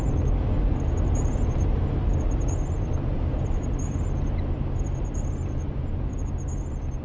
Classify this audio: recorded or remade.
remade